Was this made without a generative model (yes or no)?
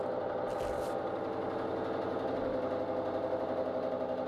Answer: yes